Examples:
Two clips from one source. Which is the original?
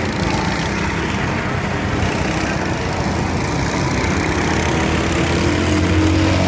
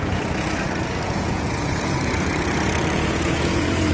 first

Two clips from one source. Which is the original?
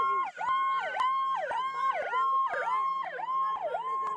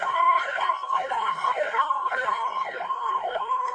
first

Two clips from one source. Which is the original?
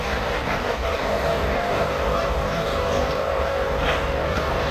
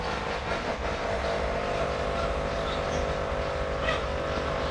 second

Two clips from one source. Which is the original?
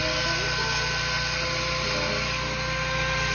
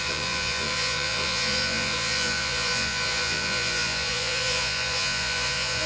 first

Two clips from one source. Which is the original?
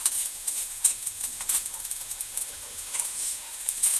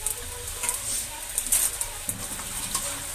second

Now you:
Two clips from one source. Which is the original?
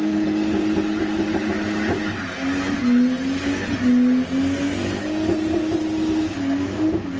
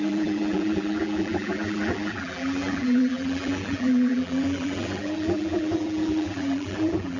first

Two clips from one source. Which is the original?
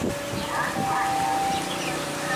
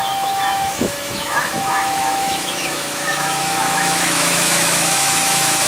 first